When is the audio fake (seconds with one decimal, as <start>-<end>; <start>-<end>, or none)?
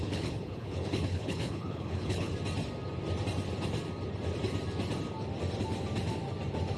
0.0-2.3